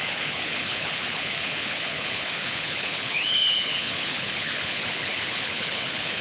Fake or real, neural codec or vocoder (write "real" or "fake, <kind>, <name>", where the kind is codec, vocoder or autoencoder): fake, codec, HILCodec